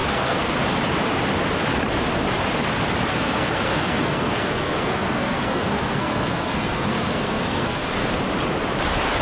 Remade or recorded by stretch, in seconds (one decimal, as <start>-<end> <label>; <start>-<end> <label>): 0.0-0.5 remade; 0.5-3.1 recorded; 3.1-7.8 remade; 7.8-9.2 recorded